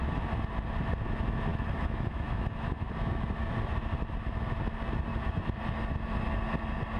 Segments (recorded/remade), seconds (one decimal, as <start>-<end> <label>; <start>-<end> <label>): 0.0-1.5 recorded; 1.5-2.9 remade; 2.9-5.1 recorded; 5.1-5.6 remade; 5.6-7.0 recorded